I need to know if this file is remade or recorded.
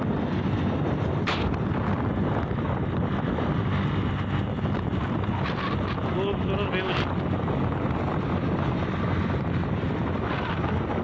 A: recorded